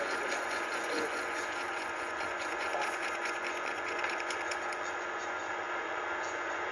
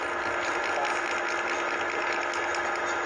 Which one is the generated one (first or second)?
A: first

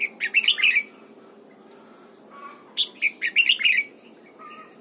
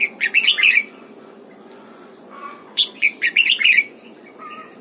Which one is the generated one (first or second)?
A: second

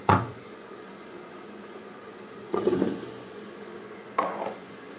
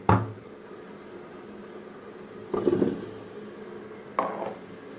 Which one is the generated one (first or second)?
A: first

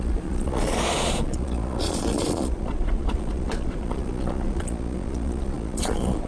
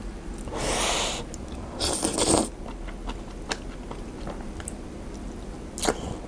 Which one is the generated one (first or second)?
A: first